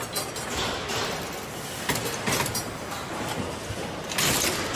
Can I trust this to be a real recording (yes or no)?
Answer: yes